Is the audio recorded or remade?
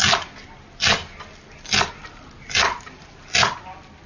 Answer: recorded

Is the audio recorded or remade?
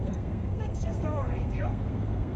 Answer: remade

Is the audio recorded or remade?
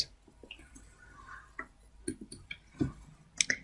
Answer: recorded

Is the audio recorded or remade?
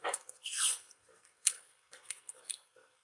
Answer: remade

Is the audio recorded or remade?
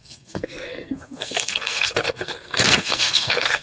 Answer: remade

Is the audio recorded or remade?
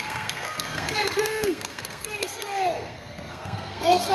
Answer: remade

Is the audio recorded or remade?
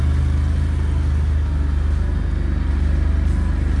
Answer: recorded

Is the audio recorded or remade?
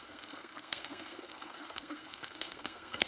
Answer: remade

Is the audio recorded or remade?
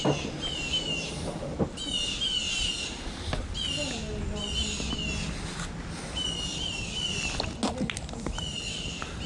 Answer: recorded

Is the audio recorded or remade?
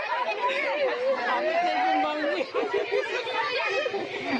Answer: recorded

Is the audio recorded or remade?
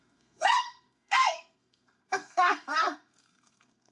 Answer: remade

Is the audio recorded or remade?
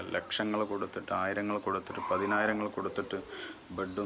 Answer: recorded